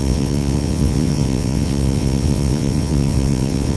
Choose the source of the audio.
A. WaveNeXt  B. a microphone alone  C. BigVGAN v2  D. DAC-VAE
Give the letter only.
A